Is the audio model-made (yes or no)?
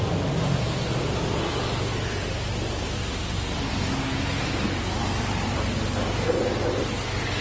no